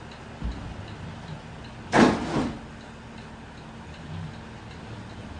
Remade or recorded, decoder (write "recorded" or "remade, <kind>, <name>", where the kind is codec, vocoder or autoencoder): recorded